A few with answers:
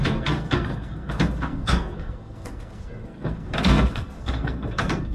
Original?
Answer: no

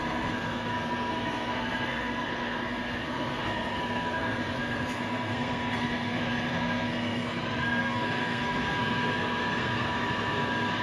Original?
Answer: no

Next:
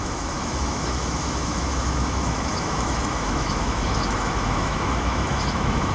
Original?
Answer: no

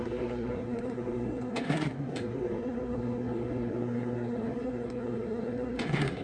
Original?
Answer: no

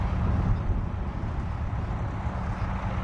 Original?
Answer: yes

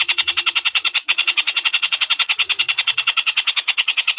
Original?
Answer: no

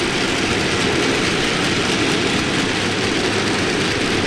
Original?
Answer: yes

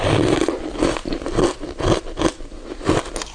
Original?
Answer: yes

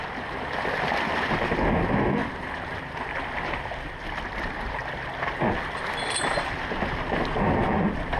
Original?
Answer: yes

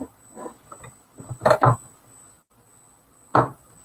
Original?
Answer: yes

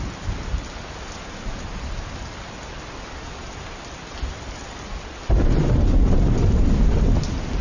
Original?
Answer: yes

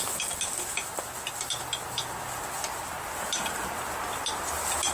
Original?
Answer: yes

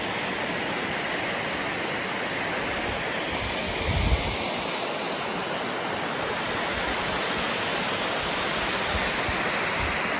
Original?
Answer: yes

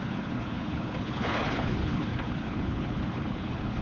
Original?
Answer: no